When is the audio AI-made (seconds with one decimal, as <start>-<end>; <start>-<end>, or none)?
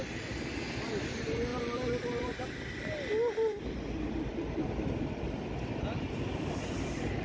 1.5-5.0